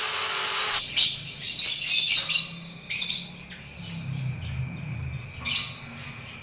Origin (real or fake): real